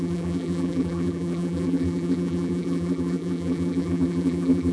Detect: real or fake fake